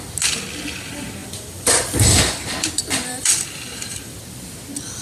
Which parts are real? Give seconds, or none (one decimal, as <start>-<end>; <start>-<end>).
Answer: 0.0-1.2; 4.2-5.0